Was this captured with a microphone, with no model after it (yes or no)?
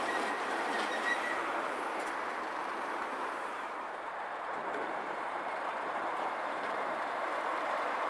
no